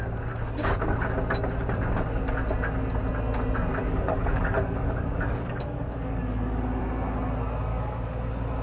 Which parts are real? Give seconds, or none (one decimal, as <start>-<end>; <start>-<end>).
0.0-3.8; 6.8-7.7; 8.2-8.6